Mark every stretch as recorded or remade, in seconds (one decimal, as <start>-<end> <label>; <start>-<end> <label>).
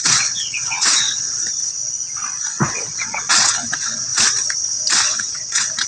0.0-1.4 remade; 1.4-2.7 recorded; 2.7-4.1 remade; 4.1-5.0 recorded; 5.0-5.9 remade